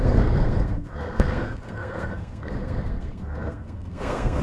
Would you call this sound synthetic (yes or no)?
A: yes